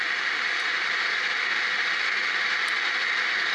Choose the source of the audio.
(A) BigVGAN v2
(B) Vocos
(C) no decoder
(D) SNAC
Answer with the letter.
C